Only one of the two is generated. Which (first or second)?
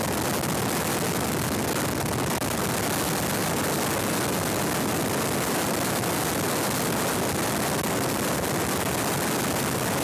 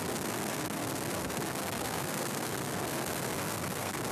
second